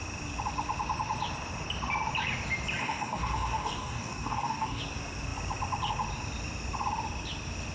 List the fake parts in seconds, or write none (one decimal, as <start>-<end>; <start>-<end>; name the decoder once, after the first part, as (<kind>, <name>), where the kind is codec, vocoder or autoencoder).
2.8-4.8 (codec, DAC)